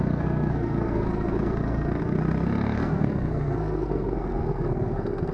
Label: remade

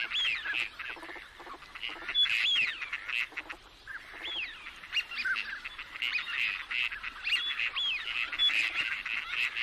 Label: recorded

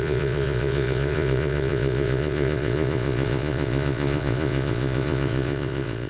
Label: remade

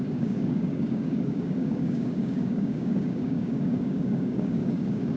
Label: remade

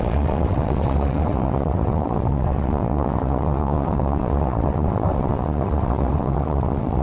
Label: remade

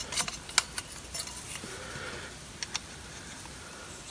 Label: recorded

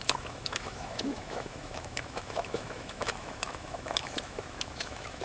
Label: remade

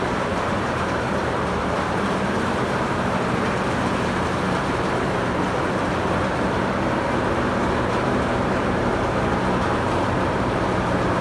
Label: remade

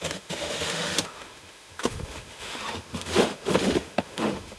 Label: remade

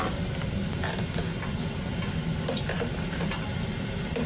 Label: recorded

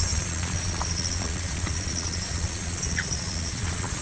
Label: remade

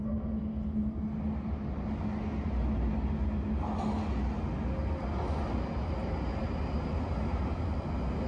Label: recorded